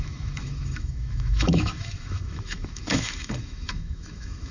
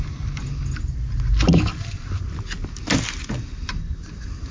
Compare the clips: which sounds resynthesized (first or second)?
first